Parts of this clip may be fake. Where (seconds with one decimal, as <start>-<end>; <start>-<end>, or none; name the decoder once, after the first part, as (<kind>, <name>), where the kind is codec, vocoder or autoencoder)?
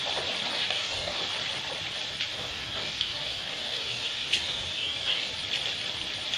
0.5-1.2 (codec, DAC); 2.3-5.3